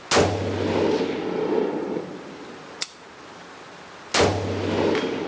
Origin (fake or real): real